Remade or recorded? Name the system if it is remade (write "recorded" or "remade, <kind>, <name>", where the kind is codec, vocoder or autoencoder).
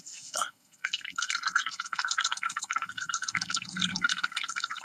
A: remade, codec, SNAC